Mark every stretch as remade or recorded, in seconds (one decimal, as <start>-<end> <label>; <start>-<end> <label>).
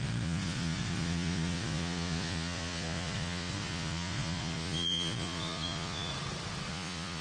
0.0-6.1 remade; 6.1-6.7 recorded; 6.7-7.2 remade